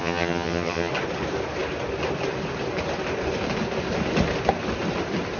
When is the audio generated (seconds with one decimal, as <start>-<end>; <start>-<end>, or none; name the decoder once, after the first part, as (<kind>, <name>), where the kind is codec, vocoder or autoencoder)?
0.0-0.9 (vocoder, HiFi-GAN)